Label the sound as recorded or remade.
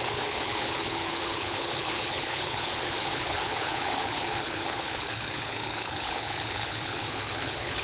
remade